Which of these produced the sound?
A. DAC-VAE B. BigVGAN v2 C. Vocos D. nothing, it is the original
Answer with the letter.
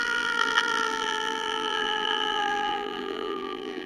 B